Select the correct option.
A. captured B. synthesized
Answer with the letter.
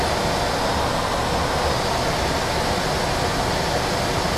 A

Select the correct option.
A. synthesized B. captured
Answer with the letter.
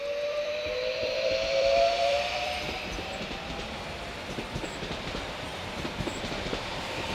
A